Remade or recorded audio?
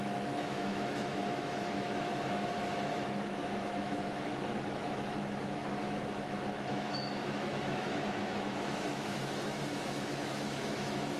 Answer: remade